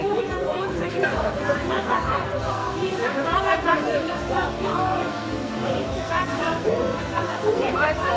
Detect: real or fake fake